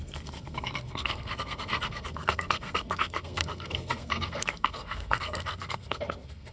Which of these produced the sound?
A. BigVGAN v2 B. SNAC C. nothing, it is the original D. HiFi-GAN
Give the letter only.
B